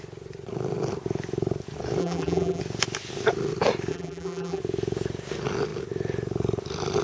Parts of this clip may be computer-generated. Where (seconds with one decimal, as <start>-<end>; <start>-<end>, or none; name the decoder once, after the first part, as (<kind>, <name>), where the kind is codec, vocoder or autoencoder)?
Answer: 2.0-2.6 (vocoder, BigVGAN v2); 3.9-4.6